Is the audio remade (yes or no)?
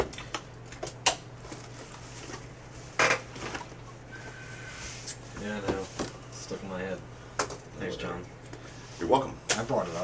no